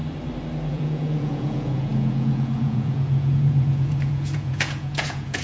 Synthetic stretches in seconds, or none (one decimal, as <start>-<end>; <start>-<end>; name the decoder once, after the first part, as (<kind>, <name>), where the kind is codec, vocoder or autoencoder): 0.7-5.4 (vocoder, Vocos)